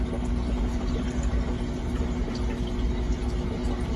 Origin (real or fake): real